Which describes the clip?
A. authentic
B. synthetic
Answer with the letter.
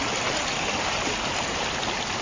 A